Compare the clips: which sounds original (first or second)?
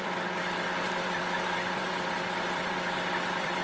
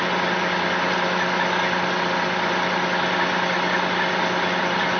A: second